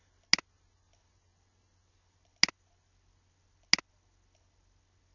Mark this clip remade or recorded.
recorded